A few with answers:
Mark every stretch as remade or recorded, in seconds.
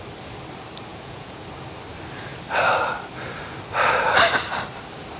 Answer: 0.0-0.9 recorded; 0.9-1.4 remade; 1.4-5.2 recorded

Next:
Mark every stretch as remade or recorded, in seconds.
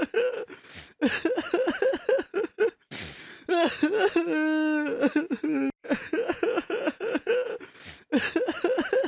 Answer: 0.0-5.8 recorded; 5.8-7.6 remade; 7.6-9.1 recorded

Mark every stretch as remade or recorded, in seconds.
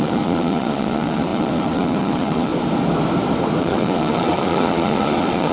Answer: 0.0-2.5 remade; 2.5-3.6 recorded; 3.6-5.5 remade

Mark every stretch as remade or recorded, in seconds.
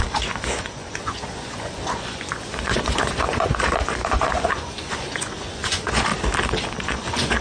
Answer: 0.0-6.1 remade; 6.1-6.8 recorded; 6.8-7.4 remade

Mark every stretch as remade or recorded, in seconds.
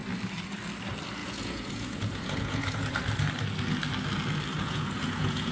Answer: 0.0-1.2 recorded; 1.2-2.9 remade; 2.9-4.5 recorded; 4.5-5.5 remade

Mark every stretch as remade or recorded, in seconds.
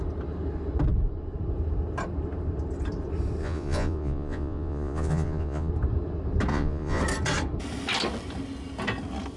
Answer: 0.0-3.4 recorded; 3.4-5.7 remade; 5.7-6.5 recorded; 6.5-7.0 remade; 7.0-9.4 recorded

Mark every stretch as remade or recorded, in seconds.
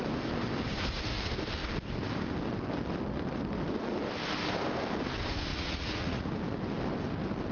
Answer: 0.0-5.5 recorded; 5.5-6.3 remade; 6.3-7.5 recorded